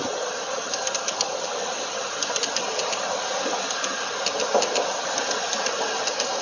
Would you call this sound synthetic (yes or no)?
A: no